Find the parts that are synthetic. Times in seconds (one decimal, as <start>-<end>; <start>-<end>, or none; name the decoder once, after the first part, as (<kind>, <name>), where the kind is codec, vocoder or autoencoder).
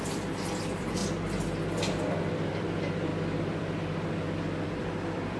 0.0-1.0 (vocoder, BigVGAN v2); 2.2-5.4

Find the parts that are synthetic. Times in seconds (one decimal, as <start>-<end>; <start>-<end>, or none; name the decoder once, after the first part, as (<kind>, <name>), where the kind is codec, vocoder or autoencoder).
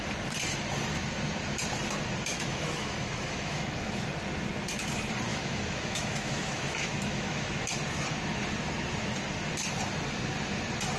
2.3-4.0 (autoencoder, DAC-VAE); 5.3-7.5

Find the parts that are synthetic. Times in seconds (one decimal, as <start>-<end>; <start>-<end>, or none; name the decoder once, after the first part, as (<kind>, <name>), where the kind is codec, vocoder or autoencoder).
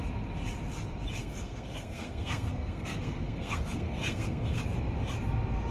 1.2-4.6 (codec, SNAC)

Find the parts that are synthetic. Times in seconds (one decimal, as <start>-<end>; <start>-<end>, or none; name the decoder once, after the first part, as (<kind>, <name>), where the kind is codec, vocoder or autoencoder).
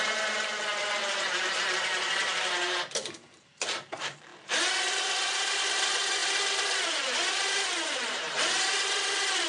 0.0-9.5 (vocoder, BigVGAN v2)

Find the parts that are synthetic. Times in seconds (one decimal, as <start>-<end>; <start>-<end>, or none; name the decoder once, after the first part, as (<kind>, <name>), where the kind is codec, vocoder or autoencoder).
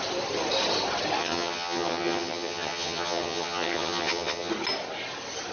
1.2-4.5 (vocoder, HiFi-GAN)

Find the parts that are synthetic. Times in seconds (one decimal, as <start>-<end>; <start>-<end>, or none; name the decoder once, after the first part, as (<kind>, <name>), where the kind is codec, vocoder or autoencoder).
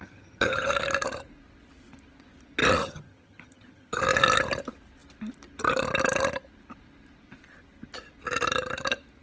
0.0-0.7 (vocoder, HiFi-GAN); 2.8-4.0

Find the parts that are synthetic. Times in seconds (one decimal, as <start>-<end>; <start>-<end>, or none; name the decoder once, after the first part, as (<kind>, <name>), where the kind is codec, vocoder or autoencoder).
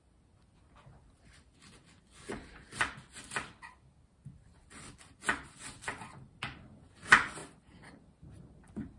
none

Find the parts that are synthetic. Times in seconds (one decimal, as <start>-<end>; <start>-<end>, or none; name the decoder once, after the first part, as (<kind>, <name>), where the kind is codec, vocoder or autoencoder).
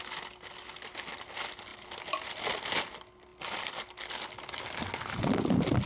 none